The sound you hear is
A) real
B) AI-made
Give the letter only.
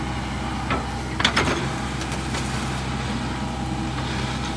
A